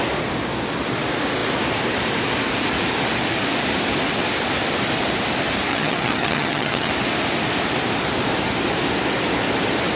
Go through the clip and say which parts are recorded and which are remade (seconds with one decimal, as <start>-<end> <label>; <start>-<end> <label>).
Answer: 0.0-5.7 recorded; 5.7-6.9 remade; 6.9-10.0 recorded